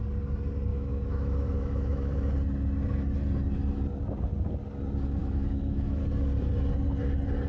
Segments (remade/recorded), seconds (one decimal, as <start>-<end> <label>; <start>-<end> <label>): 0.0-0.7 recorded; 0.7-2.3 remade; 2.3-5.2 recorded; 5.2-6.0 remade; 6.0-7.5 recorded